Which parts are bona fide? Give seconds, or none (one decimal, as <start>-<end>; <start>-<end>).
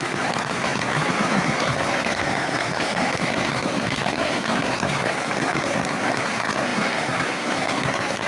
none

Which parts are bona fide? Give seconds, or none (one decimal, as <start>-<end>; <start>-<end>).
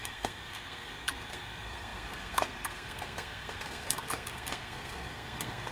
none